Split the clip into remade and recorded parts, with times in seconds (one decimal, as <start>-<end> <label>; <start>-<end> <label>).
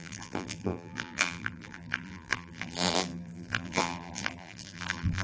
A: 0.0-5.2 remade